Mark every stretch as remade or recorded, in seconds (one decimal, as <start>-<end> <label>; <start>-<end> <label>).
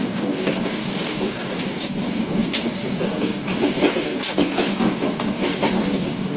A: 0.0-6.4 remade